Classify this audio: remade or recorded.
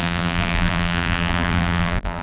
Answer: remade